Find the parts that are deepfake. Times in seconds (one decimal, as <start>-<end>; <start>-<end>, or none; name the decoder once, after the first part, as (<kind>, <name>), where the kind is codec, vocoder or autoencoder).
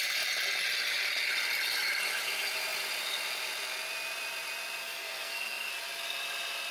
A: 4.8-5.7 (codec, SNAC)